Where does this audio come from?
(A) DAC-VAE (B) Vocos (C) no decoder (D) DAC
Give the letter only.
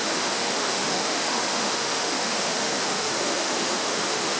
A